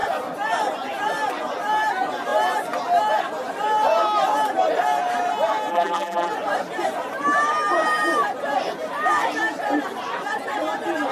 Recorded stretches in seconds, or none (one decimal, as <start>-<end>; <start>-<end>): 0.0-5.7; 6.3-11.1